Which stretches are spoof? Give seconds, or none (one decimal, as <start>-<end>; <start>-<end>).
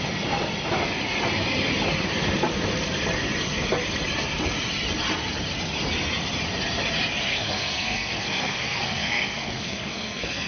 7.3-10.5